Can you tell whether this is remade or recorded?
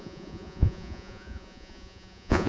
remade